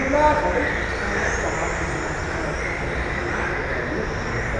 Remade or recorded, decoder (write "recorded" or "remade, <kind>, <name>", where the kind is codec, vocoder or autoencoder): recorded